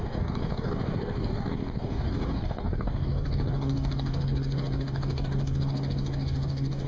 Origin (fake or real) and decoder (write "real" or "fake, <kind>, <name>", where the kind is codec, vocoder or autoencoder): fake, codec, DAC